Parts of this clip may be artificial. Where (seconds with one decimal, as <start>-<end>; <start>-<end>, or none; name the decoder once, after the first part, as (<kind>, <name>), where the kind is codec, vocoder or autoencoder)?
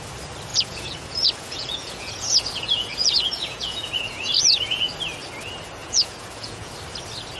0.5-4.9 (vocoder, Vocos); 5.8-6.7